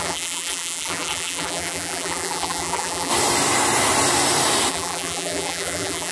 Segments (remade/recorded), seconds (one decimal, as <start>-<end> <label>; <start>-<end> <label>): 0.0-3.1 remade; 3.1-4.7 recorded; 4.7-6.1 remade

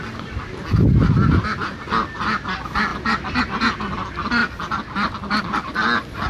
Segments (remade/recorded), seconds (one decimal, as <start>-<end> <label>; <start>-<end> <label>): 0.0-6.3 recorded

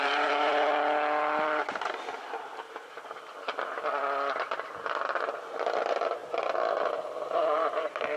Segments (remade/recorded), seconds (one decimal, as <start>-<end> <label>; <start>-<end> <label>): 0.0-0.5 remade; 0.5-5.4 recorded; 5.4-6.2 remade; 6.2-6.8 recorded; 6.8-8.2 remade

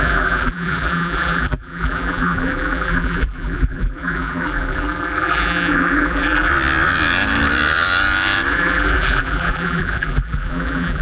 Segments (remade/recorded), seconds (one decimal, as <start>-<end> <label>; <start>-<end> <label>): 0.0-6.5 remade; 6.5-8.5 recorded; 8.5-11.0 remade

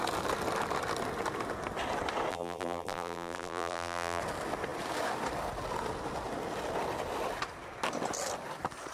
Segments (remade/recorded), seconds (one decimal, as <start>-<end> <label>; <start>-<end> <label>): 0.0-2.3 recorded; 2.3-4.2 remade; 4.2-8.9 recorded

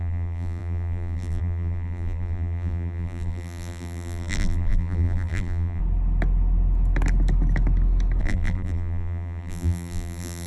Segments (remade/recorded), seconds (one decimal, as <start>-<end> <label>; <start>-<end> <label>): 0.0-5.8 remade; 5.8-8.2 recorded; 8.2-10.5 remade

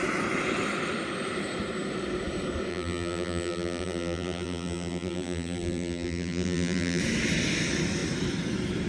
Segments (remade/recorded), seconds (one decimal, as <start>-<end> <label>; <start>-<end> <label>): 0.0-2.7 recorded; 2.7-7.0 remade; 7.0-8.9 recorded

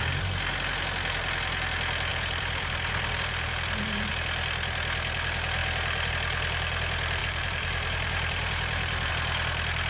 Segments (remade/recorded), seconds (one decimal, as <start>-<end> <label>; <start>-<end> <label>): 0.0-2.1 recorded; 2.1-4.1 remade; 4.1-7.2 recorded; 7.2-9.1 remade; 9.1-9.9 recorded